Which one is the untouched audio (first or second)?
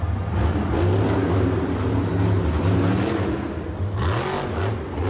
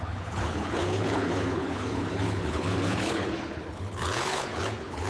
first